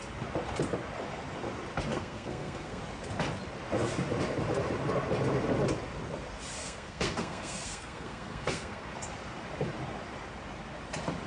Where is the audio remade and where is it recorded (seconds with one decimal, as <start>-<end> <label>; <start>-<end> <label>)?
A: 0.0-1.9 recorded; 1.9-2.8 remade; 2.8-6.6 recorded; 6.6-8.9 remade; 8.9-11.3 recorded